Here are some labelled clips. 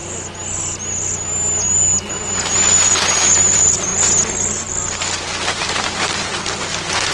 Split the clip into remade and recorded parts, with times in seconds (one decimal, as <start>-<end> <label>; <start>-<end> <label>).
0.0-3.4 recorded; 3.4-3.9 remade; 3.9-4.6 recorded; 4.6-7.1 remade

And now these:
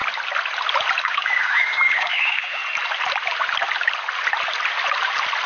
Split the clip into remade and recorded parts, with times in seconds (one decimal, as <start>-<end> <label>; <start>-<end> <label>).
0.0-1.0 recorded; 1.0-2.6 remade; 2.6-5.5 recorded

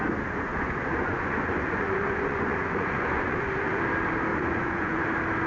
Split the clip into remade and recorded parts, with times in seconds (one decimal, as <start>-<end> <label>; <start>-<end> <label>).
0.0-0.5 recorded; 0.5-3.8 remade; 3.8-4.3 recorded; 4.3-5.0 remade; 5.0-5.5 recorded